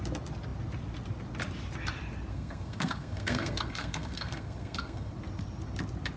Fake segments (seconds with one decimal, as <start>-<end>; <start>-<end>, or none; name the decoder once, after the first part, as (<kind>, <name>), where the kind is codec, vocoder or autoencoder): 2.3-5.1 (codec, SNAC)